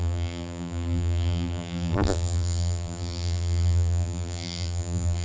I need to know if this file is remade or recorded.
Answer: remade